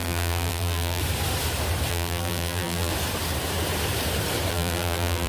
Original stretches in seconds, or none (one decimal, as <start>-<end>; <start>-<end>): 1.0-1.9; 2.9-4.5